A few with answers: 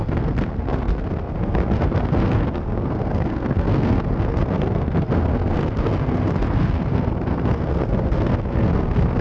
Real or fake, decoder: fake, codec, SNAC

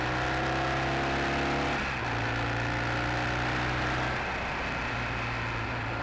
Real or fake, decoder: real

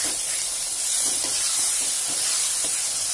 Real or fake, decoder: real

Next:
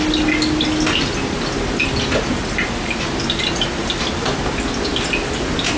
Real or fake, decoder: real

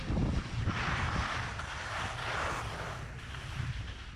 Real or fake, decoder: real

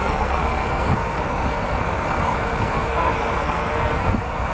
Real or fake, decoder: fake, codec, SNAC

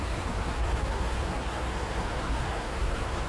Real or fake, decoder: fake, codec, SNAC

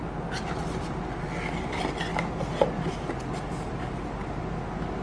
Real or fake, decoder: real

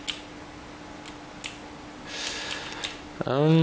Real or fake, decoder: real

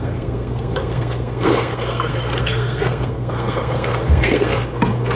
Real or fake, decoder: fake, codec, SNAC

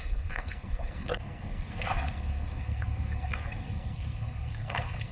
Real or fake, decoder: fake, codec, SNAC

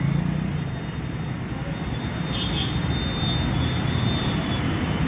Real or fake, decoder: real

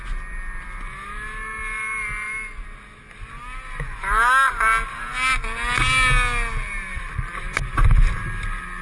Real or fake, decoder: real